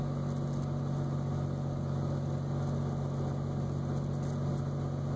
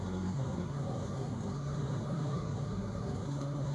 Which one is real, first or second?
first